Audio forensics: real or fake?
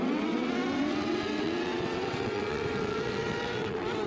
fake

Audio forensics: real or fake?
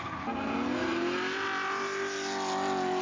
real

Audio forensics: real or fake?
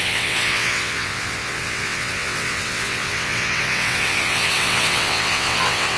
fake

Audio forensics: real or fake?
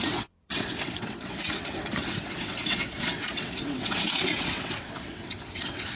fake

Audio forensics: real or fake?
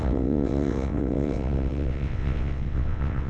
fake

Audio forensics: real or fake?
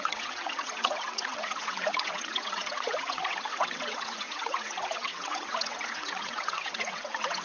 fake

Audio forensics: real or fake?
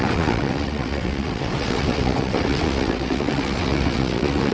fake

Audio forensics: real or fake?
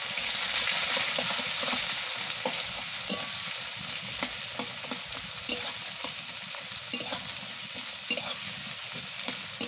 real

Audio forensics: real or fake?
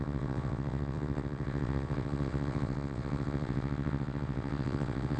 fake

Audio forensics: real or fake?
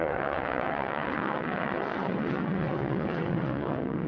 fake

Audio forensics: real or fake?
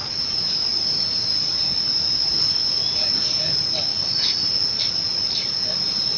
real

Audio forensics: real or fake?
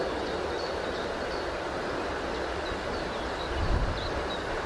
real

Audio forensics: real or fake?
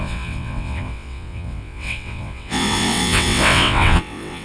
fake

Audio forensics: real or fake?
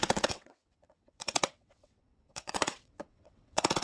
fake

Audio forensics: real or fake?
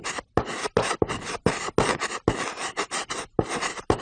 real